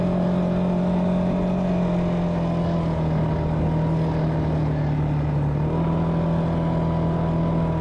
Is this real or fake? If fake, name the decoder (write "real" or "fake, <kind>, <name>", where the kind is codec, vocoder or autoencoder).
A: real